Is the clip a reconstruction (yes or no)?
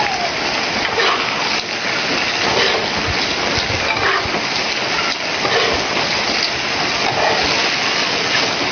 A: no